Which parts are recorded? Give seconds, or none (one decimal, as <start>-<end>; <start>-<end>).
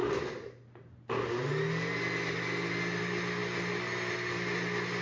0.0-5.0